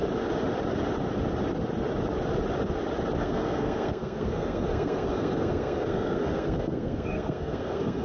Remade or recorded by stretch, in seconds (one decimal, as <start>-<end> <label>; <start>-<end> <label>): 0.0-3.2 recorded; 3.2-8.0 remade